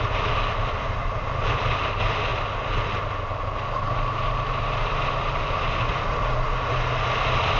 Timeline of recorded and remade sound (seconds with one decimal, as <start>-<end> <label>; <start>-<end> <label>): 0.0-7.6 recorded